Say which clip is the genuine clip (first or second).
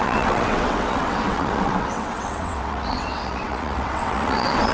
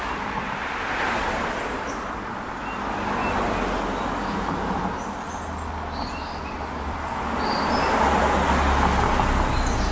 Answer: second